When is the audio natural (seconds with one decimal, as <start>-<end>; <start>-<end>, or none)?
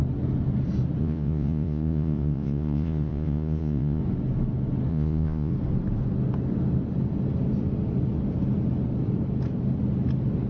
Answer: 0.0-1.0; 4.0-4.9; 5.5-10.5